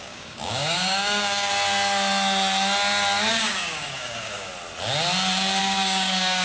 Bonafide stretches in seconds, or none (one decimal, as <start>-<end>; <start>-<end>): 1.5-3.3; 4.5-5.6